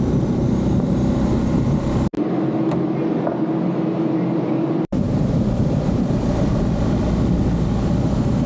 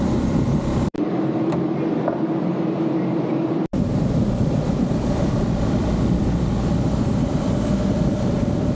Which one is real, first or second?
first